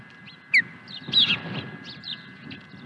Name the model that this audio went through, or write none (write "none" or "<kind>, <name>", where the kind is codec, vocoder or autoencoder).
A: none